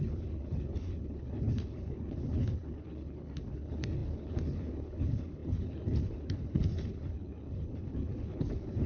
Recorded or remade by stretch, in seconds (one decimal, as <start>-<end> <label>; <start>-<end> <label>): 0.0-8.9 remade